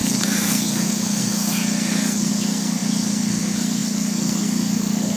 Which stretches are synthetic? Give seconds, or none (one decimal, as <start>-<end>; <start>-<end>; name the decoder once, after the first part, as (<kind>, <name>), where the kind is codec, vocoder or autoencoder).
0.0-5.2 (codec, SNAC)